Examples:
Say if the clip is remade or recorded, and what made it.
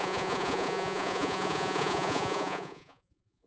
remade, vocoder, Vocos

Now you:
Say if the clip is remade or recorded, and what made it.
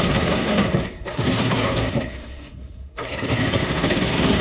remade, codec, SNAC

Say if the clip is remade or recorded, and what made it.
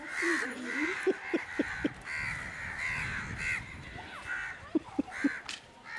remade, vocoder, BigVGAN v2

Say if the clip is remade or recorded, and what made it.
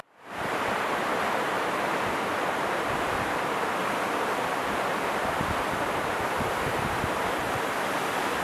recorded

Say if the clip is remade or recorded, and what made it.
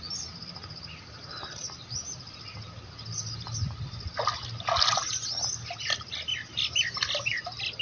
recorded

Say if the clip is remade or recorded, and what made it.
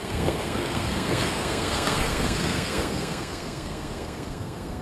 remade, codec, SNAC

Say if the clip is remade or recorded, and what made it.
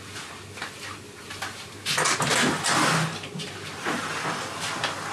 recorded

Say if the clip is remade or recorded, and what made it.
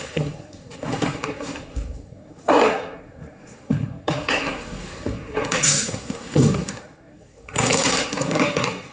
remade, codec, SNAC